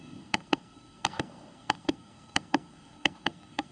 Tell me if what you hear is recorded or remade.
remade